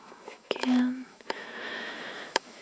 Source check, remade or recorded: remade